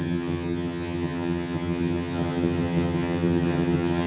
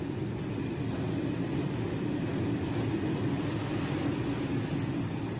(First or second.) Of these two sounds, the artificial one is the first